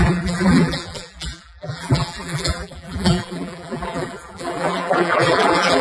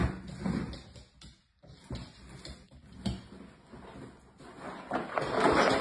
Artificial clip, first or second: first